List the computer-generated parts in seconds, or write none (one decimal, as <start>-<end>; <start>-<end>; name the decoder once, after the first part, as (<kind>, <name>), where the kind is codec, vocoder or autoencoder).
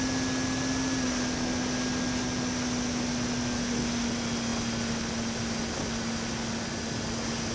none